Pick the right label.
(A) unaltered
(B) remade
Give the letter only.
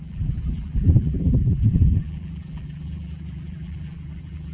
B